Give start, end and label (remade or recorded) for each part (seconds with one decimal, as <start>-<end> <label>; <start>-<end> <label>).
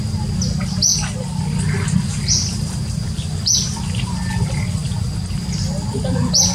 0.0-6.5 recorded